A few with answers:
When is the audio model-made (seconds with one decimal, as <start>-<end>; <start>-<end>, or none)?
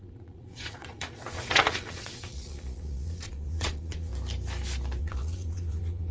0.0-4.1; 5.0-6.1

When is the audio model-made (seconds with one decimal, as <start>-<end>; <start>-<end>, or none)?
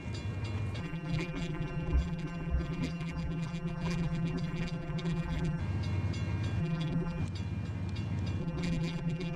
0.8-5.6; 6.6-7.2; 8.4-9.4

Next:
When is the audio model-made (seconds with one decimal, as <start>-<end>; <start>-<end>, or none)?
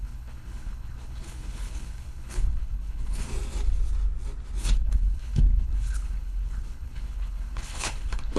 0.0-3.3; 4.6-8.4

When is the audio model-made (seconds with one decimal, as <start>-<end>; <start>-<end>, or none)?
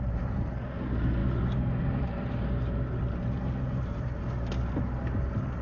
none